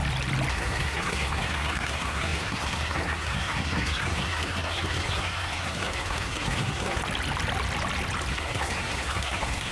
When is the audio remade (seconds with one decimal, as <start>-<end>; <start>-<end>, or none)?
0.5-7.0; 8.3-9.7

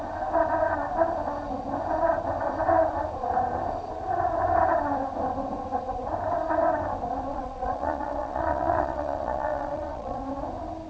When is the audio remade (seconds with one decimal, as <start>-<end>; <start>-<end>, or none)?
7.3-10.2

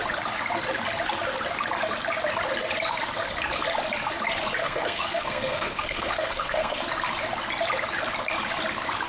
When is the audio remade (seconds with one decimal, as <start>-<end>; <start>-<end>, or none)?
4.6-6.8

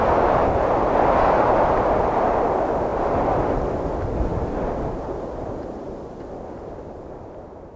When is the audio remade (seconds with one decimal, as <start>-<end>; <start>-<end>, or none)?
none

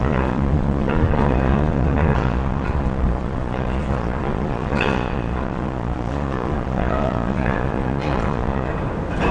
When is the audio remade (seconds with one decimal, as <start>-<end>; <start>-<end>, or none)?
0.0-8.7

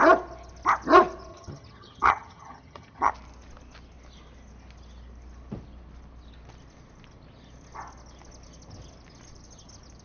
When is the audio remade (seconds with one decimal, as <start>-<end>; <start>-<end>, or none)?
1.3-3.1

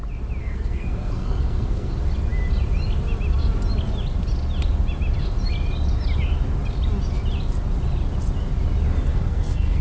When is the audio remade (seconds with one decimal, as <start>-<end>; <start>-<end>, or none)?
0.4-1.9; 9.1-9.8